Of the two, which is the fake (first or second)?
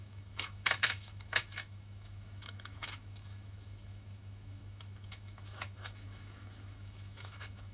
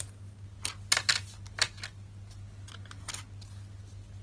first